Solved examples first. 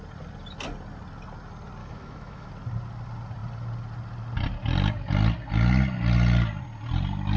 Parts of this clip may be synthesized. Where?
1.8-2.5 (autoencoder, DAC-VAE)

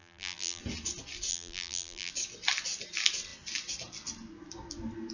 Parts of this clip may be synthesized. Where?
0.0-0.6 (vocoder, BigVGAN v2); 1.3-2.1

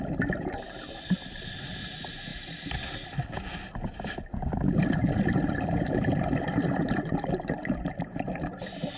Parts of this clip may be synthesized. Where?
5.0-6.6 (vocoder, BigVGAN v2)

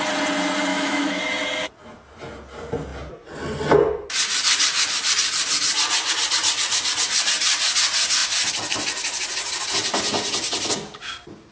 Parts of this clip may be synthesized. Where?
0.7-1.2 (autoencoder, DAC-VAE)

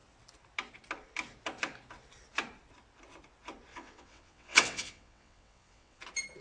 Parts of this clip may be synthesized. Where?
3.7-6.0 (vocoder, WaveNeXt)